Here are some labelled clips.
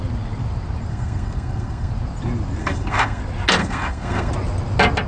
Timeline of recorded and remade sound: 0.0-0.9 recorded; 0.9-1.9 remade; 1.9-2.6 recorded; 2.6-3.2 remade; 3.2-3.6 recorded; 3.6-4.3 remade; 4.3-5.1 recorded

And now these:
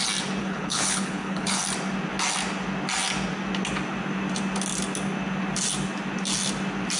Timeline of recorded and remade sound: 0.0-0.4 recorded; 0.4-1.6 remade; 1.6-7.0 recorded

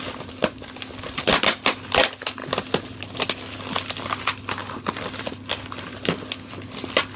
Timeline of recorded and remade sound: 0.0-4.6 recorded; 4.6-5.6 remade; 5.6-7.2 recorded

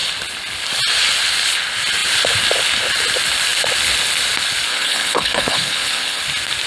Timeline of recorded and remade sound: 0.0-4.7 recorded; 4.7-6.2 remade; 6.2-6.7 recorded